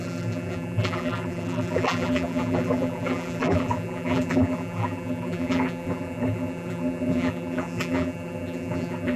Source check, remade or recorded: remade